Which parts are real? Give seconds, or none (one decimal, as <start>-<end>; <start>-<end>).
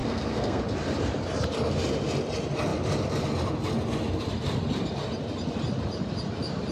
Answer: 0.6-6.7